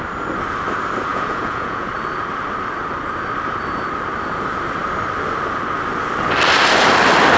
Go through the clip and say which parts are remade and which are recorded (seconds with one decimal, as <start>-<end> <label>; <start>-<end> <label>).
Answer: 0.0-1.1 recorded; 1.1-1.9 remade; 1.9-7.4 recorded